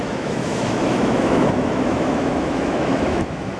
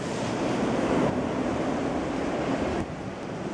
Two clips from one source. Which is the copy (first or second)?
first